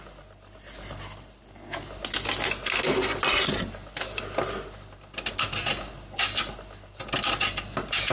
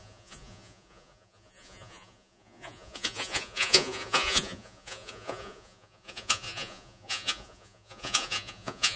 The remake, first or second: second